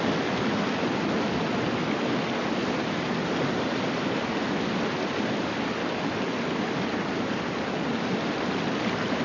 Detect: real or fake real